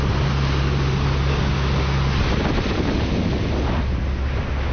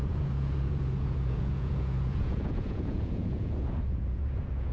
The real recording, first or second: first